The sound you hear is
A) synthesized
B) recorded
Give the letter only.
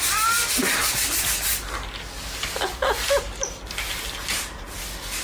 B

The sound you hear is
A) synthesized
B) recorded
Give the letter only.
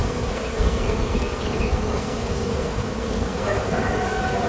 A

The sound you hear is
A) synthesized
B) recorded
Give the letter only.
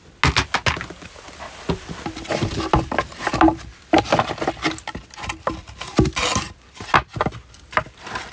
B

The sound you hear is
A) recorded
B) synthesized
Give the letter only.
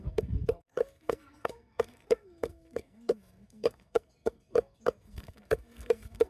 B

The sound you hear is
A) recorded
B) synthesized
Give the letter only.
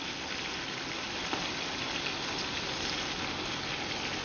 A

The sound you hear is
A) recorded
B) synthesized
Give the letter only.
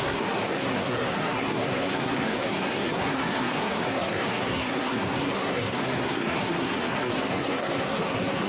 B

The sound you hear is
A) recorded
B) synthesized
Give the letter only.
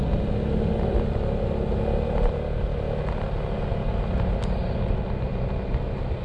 A